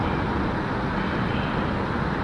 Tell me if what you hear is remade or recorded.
recorded